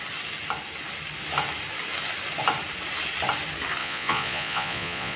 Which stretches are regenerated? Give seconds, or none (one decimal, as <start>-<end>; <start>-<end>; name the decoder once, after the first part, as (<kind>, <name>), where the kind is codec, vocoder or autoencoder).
3.8-5.2 (vocoder, Vocos)